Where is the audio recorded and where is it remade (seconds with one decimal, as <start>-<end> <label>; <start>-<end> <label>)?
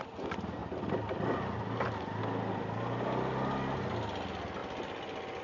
0.0-5.4 recorded